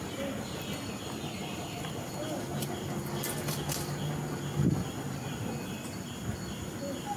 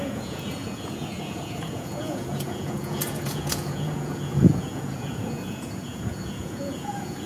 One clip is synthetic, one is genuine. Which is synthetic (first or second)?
second